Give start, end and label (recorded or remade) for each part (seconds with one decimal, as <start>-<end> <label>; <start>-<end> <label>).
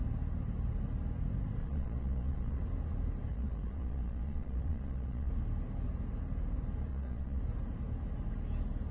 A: 0.0-1.6 recorded; 1.6-2.6 remade; 2.6-3.3 recorded; 3.3-5.3 remade; 5.3-6.9 recorded; 6.9-7.4 remade; 7.4-8.9 recorded